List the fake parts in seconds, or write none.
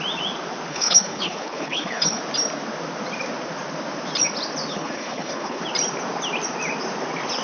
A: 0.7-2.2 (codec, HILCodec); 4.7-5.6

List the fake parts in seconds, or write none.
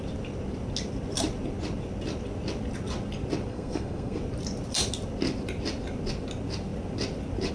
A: 3.5-4.2 (codec, SNAC)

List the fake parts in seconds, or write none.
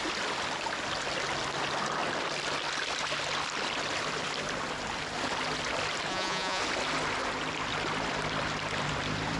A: 6.1-6.6 (vocoder, Vocos)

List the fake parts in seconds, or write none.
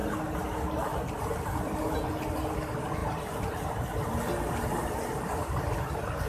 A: none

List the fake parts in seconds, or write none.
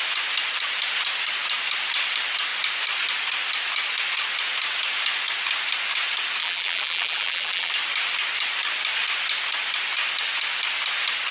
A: 6.4-7.7 (vocoder, BigVGAN v2)